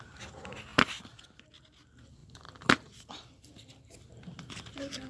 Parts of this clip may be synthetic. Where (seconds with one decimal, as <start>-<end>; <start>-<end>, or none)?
2.2-3.9